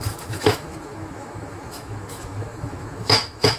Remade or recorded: remade